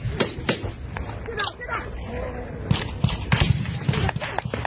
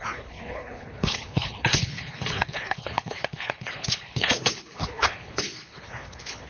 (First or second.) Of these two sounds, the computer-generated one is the second